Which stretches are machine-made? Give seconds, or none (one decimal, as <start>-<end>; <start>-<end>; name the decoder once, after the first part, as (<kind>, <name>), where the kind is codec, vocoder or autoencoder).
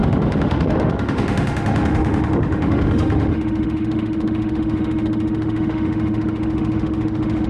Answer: 0.0-7.5 (autoencoder, DAC-VAE)